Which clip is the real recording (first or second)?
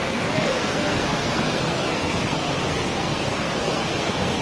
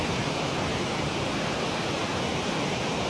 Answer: second